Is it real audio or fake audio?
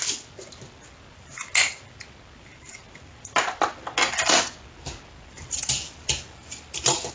real